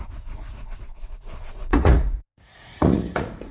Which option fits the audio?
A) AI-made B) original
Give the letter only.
A